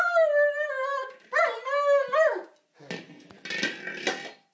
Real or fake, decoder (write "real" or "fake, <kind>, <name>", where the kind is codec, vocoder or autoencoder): real